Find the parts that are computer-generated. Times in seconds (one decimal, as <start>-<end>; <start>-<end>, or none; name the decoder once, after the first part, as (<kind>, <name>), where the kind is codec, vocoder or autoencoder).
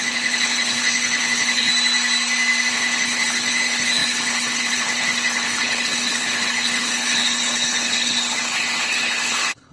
0.0-1.7 (codec, HILCodec); 2.7-9.7